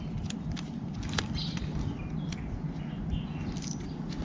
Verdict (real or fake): real